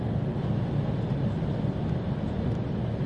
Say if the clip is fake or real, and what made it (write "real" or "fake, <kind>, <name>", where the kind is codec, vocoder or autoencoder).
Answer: real